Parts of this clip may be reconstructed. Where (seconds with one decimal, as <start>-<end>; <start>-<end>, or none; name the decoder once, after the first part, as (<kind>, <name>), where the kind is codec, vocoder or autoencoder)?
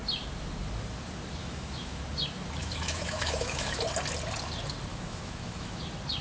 1.4-2.0 (autoencoder, DAC-VAE); 2.6-3.8; 4.9-5.8